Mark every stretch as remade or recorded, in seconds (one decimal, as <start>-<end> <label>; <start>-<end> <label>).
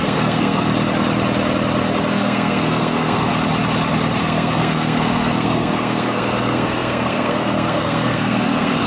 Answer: 0.0-0.7 remade; 0.7-2.1 recorded; 2.1-3.3 remade; 3.3-4.2 recorded; 4.2-8.9 remade